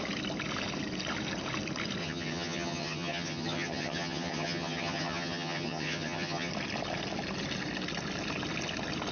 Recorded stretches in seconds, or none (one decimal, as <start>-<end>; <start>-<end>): 0.0-2.0; 6.5-9.1